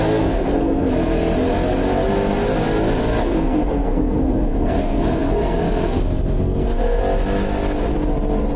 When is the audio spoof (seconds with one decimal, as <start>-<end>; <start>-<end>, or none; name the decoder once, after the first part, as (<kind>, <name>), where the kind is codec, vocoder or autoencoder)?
0.0-0.9 (codec, SNAC); 3.2-7.0